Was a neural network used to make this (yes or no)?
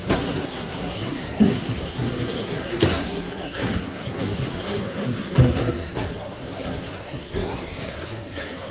yes